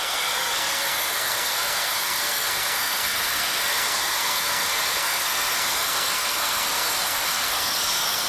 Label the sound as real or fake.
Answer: fake